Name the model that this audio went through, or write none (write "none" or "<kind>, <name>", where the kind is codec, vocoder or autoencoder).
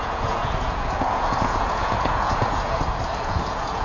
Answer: vocoder, Vocos